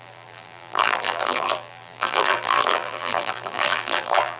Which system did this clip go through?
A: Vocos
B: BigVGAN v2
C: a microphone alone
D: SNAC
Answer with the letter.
B